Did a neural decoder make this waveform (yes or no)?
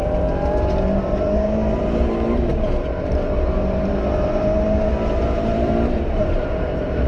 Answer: yes